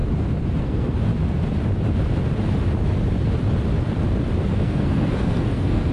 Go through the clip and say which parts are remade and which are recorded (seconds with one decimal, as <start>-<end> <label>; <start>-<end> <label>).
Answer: 0.0-0.6 recorded; 0.6-1.1 remade; 1.1-4.4 recorded; 4.4-5.9 remade